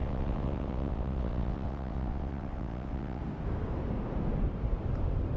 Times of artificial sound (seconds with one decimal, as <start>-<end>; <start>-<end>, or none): 0.0-3.2